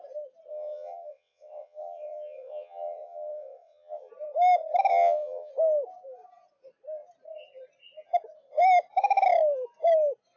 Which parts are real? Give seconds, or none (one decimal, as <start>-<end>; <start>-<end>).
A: 0.0-0.5; 4.1-4.9; 5.5-10.4